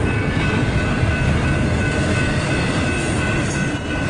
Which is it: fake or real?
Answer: real